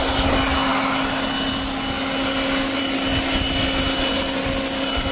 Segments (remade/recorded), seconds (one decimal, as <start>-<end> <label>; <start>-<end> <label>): 0.0-5.1 recorded